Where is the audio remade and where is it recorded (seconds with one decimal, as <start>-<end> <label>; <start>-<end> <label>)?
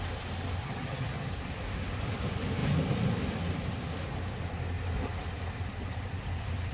0.0-0.6 recorded; 0.6-1.3 remade; 1.3-6.7 recorded